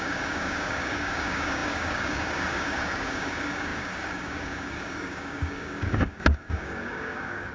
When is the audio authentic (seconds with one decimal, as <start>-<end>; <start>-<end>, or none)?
none